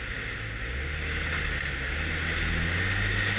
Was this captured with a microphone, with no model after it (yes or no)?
yes